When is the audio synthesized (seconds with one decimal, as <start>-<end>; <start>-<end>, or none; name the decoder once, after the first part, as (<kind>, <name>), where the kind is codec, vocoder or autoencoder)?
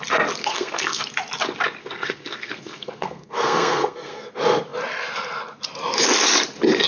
0.4-1.0 (codec, SNAC); 1.8-4.3